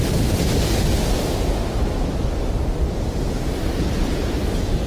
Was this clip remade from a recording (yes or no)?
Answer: no